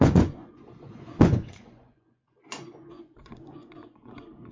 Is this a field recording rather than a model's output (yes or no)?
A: no